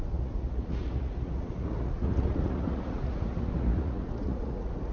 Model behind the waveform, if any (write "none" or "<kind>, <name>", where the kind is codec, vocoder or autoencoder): vocoder, Vocos